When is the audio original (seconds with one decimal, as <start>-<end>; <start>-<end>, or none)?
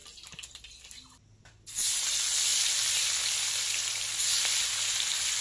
0.0-2.5; 3.1-5.4